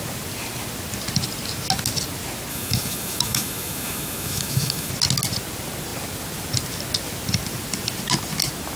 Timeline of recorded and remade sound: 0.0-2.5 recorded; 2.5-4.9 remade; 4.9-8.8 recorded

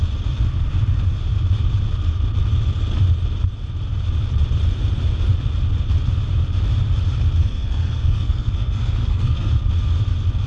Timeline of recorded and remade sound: 0.0-7.4 recorded; 7.4-9.5 remade; 9.5-10.5 recorded

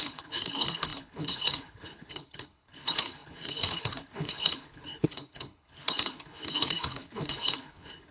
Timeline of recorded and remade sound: 0.0-8.1 remade

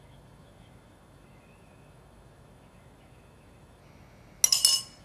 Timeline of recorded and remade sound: 0.0-3.8 remade; 3.8-5.0 recorded

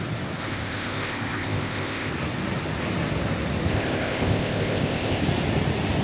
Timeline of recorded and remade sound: 0.0-0.4 recorded; 0.4-2.1 remade; 2.1-3.7 recorded; 3.7-5.2 remade; 5.2-6.0 recorded

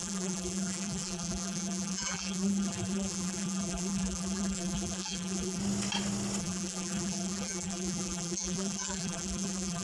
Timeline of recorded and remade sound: 0.0-5.6 remade; 5.6-6.4 recorded; 6.4-9.8 remade